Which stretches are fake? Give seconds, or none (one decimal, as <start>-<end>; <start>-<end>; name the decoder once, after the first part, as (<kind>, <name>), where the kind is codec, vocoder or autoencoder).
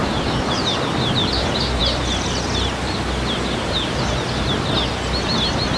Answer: none